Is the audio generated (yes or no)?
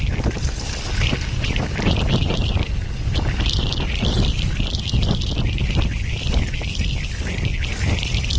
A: no